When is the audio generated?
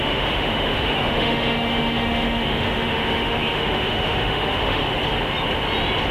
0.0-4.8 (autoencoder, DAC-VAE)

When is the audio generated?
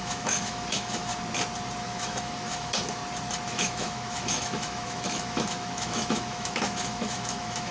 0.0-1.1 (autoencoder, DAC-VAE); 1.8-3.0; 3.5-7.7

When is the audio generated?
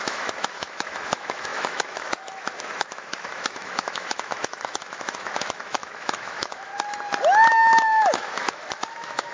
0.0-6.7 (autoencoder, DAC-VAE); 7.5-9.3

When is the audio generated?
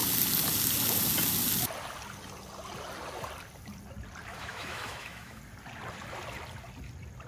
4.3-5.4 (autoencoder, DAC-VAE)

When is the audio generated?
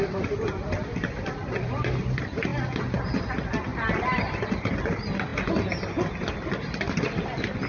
none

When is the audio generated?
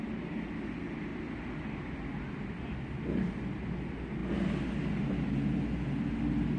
none